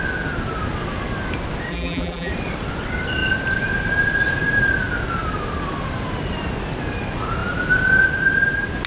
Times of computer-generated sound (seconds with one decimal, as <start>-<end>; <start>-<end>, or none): 1.7-2.3